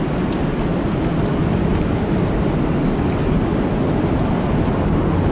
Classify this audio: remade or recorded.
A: recorded